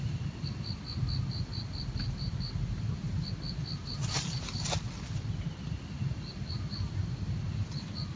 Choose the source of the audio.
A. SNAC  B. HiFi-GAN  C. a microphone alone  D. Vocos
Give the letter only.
C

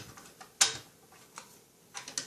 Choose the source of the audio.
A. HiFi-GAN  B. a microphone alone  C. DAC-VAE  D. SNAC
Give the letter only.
B